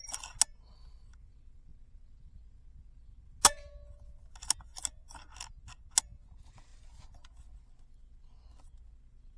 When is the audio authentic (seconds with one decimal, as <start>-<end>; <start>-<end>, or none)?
0.0-9.4